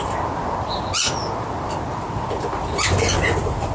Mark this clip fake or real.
real